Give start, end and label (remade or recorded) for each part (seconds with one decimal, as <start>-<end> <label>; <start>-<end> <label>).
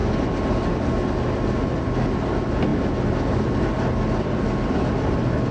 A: 0.0-5.5 recorded